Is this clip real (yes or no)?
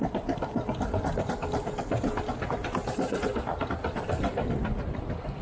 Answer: yes